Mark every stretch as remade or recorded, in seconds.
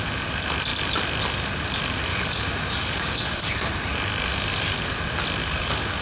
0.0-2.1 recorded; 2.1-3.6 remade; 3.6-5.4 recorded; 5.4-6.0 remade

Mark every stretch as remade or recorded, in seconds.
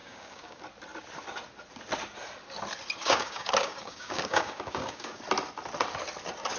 0.0-0.6 remade; 0.6-3.0 recorded; 3.0-5.2 remade; 5.2-6.6 recorded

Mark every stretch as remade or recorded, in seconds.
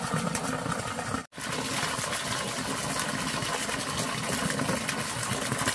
0.0-5.7 recorded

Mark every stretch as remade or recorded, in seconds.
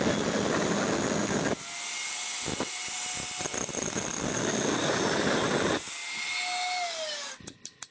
0.0-7.9 recorded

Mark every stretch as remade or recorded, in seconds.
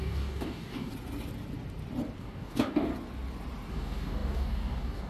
0.0-0.9 remade; 0.9-2.2 recorded; 2.2-2.9 remade; 2.9-3.7 recorded; 3.7-5.1 remade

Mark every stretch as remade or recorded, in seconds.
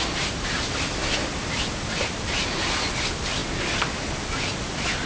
0.0-5.1 recorded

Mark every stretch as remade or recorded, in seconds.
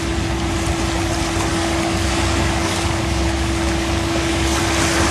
0.0-1.5 recorded; 1.5-4.6 remade; 4.6-5.1 recorded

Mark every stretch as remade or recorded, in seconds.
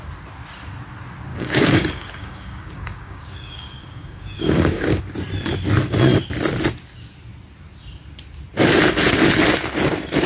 0.0-1.3 recorded; 1.3-5.0 remade; 5.0-10.3 recorded